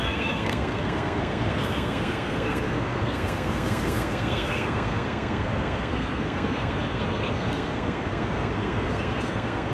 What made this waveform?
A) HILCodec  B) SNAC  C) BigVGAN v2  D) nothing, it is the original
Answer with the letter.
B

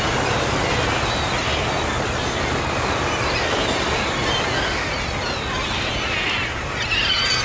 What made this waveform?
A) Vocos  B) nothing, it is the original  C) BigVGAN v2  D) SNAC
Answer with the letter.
B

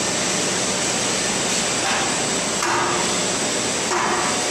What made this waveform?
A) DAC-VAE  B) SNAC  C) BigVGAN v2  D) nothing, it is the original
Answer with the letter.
D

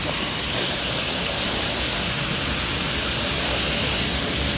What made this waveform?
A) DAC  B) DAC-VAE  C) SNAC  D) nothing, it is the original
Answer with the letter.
D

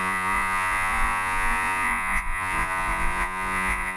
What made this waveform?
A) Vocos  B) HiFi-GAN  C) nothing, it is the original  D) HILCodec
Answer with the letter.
A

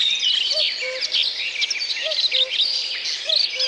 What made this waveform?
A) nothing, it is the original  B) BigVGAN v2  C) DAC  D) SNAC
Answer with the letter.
A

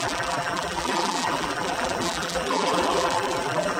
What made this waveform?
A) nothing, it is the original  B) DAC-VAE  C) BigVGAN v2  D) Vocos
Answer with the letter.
C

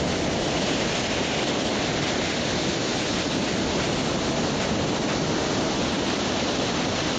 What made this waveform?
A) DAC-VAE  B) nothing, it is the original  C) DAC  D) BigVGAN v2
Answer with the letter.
B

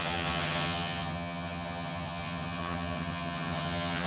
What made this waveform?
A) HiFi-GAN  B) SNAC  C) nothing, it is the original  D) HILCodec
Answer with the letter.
A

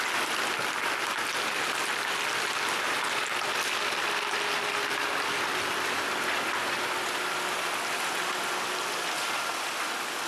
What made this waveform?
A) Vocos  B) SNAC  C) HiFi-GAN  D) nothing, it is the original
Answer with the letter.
D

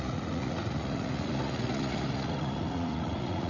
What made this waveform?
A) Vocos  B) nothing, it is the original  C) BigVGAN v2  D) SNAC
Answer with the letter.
A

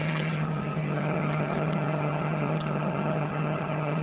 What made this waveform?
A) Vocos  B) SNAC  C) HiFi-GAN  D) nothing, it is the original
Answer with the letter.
C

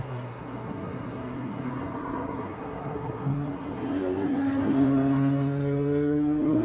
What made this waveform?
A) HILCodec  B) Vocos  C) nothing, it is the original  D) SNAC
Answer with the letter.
D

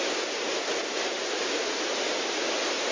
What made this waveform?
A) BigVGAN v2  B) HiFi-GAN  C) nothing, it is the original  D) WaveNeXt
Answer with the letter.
C